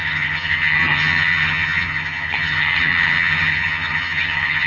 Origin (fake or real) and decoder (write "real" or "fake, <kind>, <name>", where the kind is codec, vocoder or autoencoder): fake, vocoder, HiFi-GAN